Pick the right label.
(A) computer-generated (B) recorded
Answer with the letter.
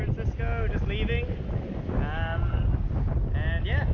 B